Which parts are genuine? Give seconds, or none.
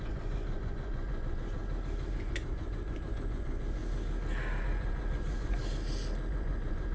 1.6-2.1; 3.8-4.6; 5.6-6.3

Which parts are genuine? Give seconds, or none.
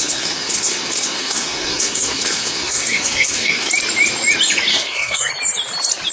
3.7-4.7; 5.3-6.1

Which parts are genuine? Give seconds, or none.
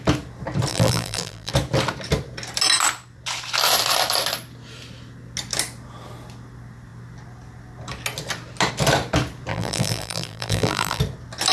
0.0-0.7; 1.5-9.5; 11.0-11.5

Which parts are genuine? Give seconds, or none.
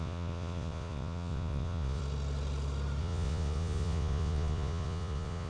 2.0-3.0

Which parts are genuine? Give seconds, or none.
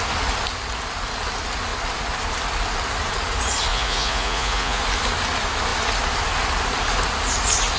0.0-3.7; 4.8-7.8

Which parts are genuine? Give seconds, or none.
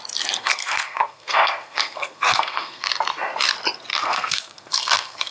0.0-0.4; 2.9-3.9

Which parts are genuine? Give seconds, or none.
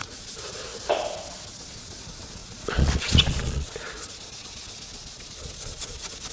0.7-1.5